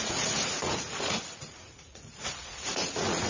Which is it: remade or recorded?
remade